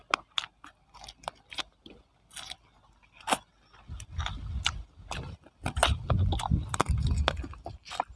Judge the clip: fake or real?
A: real